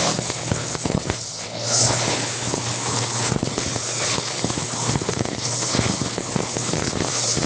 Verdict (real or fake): fake